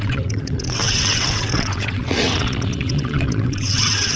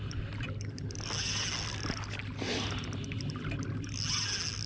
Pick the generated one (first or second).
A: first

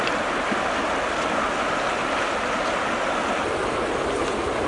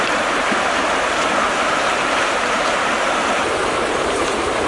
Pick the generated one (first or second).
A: second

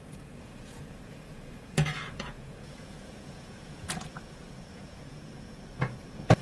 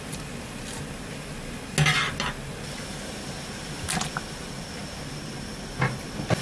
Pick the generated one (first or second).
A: first